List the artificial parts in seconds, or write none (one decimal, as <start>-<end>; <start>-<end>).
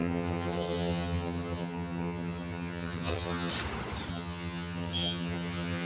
0.0-3.5; 4.1-5.9